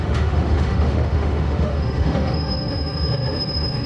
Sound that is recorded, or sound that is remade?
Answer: remade